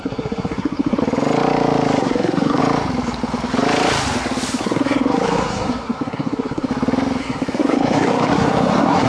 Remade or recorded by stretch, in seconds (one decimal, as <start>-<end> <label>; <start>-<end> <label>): 0.0-1.0 remade; 1.0-2.0 recorded; 2.0-2.6 remade; 2.6-4.5 recorded; 4.5-6.7 remade; 6.7-7.2 recorded; 7.2-9.1 remade